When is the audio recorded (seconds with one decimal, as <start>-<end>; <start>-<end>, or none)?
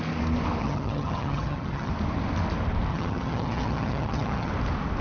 0.0-0.6; 1.9-2.9; 4.5-5.0